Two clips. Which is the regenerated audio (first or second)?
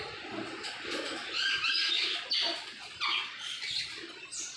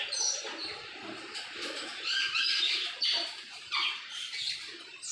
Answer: second